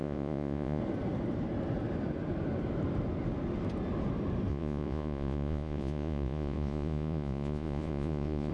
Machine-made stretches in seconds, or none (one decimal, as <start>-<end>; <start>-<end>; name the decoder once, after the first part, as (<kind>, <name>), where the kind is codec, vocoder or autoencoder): 0.0-0.8 (vocoder, Vocos); 4.5-8.5